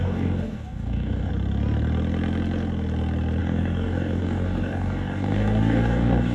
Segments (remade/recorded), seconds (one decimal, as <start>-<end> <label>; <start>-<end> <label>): 0.0-1.3 remade; 1.3-3.4 recorded; 3.4-6.3 remade